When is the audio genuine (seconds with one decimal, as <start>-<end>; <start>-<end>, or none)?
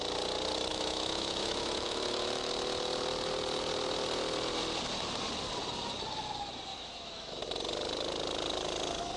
0.0-0.7; 2.5-6.7; 7.4-9.2